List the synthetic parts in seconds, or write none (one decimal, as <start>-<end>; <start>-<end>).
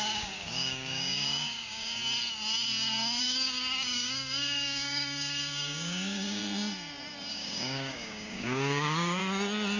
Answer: 0.0-2.0; 3.2-6.4; 7.3-9.2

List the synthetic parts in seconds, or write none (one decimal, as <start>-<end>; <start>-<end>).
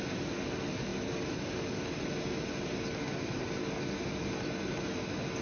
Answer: none